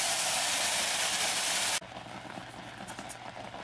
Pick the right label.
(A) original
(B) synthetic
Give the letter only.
A